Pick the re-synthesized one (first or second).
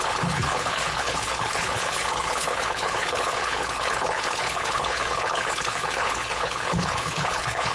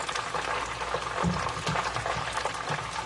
first